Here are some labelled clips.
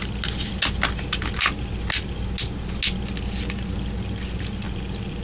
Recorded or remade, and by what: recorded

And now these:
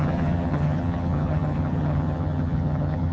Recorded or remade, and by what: remade, vocoder, HiFi-GAN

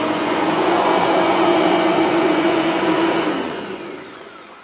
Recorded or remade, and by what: remade, vocoder, Vocos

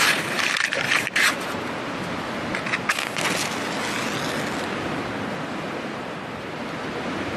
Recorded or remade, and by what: recorded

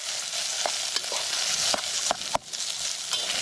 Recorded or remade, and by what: recorded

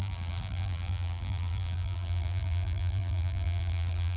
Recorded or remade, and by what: remade, vocoder, BigVGAN v2